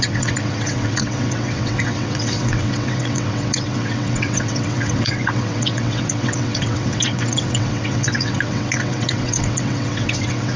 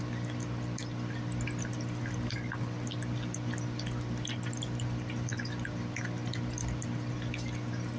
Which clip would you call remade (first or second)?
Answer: first